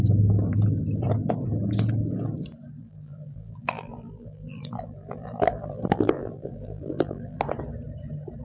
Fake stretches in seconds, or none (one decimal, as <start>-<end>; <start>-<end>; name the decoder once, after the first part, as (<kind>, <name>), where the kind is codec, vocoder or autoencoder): 2.8-7.4 (vocoder, BigVGAN v2)